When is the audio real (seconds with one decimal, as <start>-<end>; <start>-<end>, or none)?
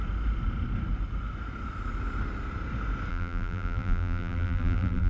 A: 0.0-3.1